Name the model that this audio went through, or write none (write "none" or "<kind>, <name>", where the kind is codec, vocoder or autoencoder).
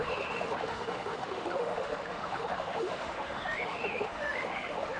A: autoencoder, DAC-VAE